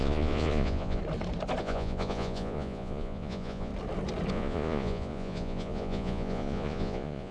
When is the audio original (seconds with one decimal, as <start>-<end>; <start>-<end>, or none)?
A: 1.0-1.6; 3.7-4.3